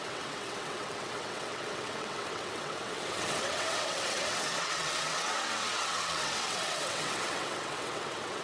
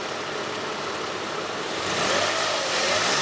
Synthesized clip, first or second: first